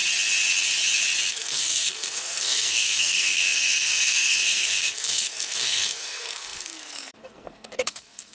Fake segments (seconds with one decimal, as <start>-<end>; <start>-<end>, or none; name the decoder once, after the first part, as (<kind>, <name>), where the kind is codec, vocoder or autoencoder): 1.3-8.3 (codec, SNAC)